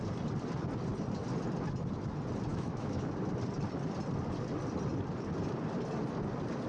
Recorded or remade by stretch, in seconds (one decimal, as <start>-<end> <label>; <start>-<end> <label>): 0.0-2.5 recorded; 2.5-3.1 remade; 3.1-6.7 recorded